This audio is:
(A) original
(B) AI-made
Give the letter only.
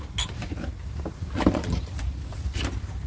A